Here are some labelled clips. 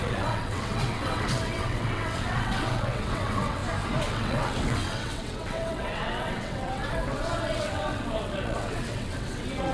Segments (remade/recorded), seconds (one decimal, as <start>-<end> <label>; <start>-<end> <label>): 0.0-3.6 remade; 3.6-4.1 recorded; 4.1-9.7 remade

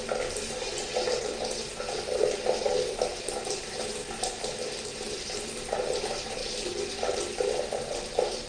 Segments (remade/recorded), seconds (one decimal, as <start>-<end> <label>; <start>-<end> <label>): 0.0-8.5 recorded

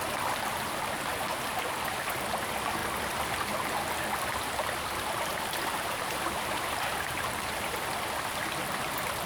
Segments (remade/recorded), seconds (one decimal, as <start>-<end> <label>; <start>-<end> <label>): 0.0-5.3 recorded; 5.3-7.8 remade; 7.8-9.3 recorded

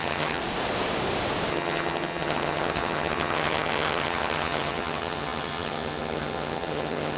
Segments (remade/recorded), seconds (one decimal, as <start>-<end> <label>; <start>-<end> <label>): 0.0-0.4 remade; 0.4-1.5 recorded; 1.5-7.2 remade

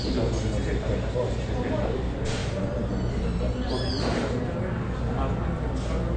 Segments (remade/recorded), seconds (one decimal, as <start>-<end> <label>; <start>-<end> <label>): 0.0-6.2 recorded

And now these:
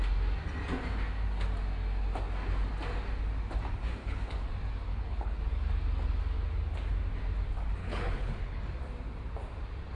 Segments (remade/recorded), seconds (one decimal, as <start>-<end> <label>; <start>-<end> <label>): 0.0-4.0 recorded; 4.0-4.5 remade; 4.5-4.9 recorded; 4.9-5.4 remade; 5.4-7.8 recorded; 7.8-8.6 remade; 8.6-10.0 recorded

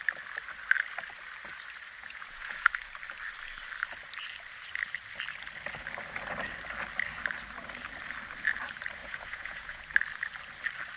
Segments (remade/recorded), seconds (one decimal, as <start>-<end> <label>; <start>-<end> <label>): 0.0-2.0 recorded; 2.0-2.7 remade; 2.7-9.0 recorded; 9.0-9.8 remade; 9.8-11.0 recorded

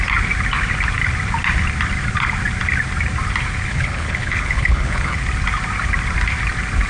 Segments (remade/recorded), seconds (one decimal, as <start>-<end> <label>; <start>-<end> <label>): 0.0-3.7 recorded; 3.7-5.2 remade; 5.2-6.9 recorded